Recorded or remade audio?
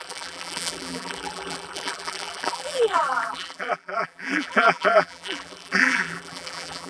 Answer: remade